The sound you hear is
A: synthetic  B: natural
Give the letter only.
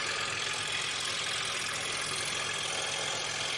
B